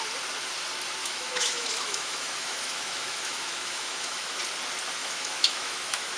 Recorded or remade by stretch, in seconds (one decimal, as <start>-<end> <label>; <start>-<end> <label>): 0.0-1.0 recorded; 1.0-4.4 remade; 4.4-5.0 recorded; 5.0-6.2 remade